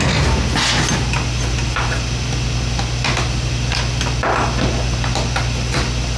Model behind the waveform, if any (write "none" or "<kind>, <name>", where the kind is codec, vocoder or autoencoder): none